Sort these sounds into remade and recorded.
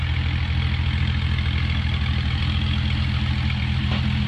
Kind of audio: recorded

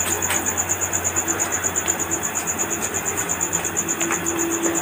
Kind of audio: recorded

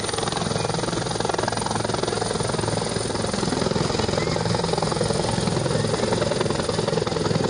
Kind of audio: recorded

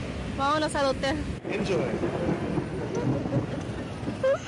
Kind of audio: recorded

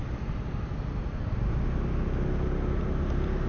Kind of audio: recorded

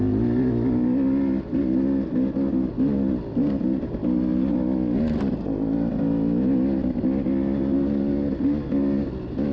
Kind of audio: recorded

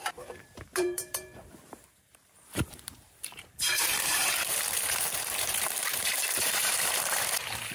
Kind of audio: remade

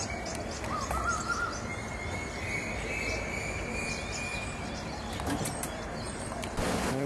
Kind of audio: recorded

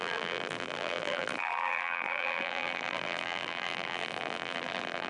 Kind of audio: remade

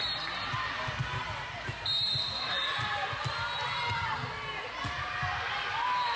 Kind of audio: recorded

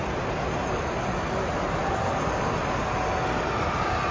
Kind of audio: recorded